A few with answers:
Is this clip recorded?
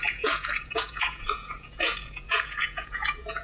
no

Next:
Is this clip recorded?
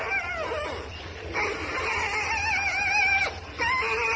yes